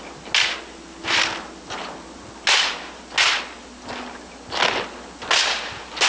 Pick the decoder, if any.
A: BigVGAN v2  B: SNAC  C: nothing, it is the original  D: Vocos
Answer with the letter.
C